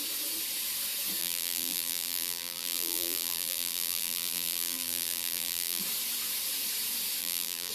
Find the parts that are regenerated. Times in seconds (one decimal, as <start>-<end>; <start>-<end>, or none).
1.2-5.8; 7.2-7.7